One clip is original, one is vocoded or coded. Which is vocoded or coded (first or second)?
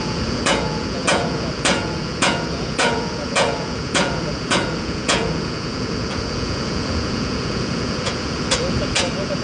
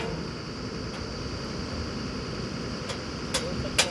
first